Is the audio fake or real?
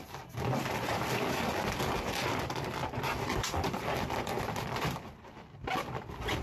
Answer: fake